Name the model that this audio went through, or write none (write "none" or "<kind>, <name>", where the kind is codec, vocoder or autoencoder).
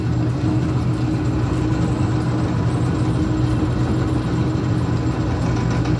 none